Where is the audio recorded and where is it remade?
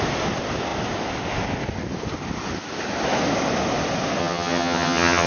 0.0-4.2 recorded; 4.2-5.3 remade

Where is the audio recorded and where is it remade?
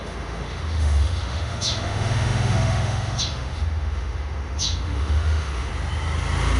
0.0-5.7 remade; 5.7-6.6 recorded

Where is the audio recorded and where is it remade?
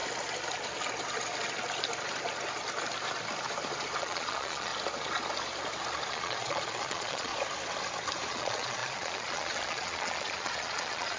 0.0-4.0 recorded; 4.0-4.7 remade; 4.7-6.1 recorded; 6.1-7.3 remade; 7.3-8.3 recorded; 8.3-11.2 remade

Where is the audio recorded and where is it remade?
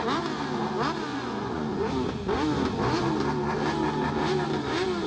0.0-1.1 recorded; 1.1-1.9 remade; 1.9-5.1 recorded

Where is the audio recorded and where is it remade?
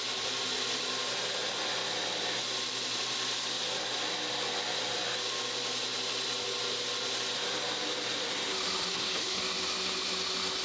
0.0-8.9 recorded; 8.9-9.4 remade; 9.4-10.6 recorded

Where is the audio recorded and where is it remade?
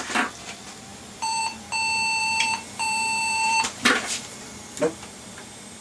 0.0-0.9 recorded; 0.9-1.4 remade; 1.4-2.2 recorded; 2.2-5.8 remade